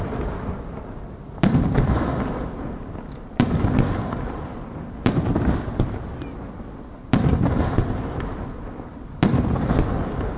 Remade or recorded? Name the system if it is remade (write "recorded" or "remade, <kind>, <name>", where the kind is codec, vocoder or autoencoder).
recorded